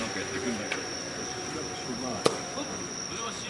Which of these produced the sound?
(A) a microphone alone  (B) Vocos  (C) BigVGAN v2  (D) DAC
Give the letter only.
B